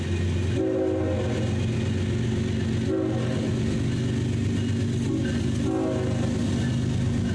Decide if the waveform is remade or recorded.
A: recorded